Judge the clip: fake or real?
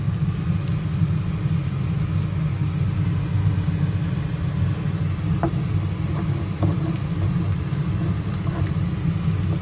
real